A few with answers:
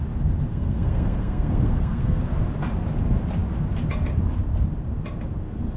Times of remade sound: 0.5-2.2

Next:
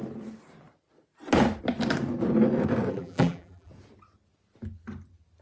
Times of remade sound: 2.9-3.7

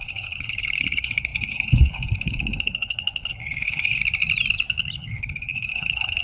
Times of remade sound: 0.0-4.0; 4.9-6.2

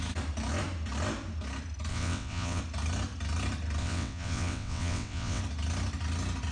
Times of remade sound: 1.9-2.6; 3.8-5.4

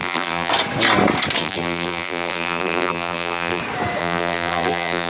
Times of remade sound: 0.0-0.5; 1.4-3.6; 4.0-5.1

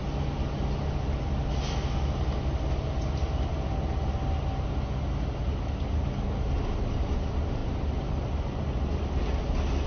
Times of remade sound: none

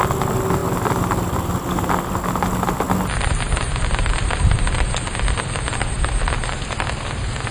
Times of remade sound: 0.6-2.1

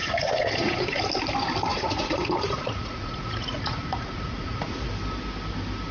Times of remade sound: 0.0-1.0; 1.7-4.9